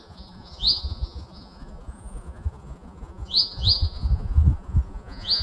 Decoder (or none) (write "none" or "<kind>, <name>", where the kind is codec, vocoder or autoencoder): vocoder, Vocos